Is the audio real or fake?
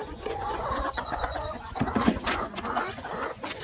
fake